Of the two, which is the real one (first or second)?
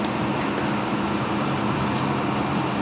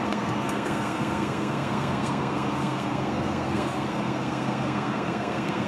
first